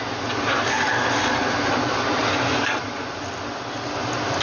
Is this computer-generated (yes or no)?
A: no